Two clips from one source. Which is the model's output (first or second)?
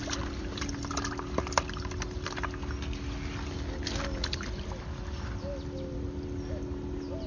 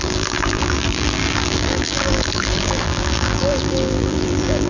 second